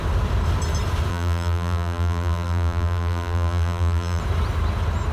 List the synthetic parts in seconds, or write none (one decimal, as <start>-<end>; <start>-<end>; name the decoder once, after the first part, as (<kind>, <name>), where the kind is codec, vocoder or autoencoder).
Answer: 1.1-4.2 (vocoder, BigVGAN v2)